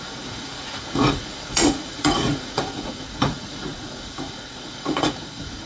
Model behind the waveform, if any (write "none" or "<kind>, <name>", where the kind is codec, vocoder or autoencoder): vocoder, Vocos